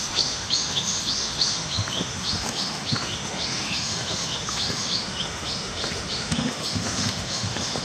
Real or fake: fake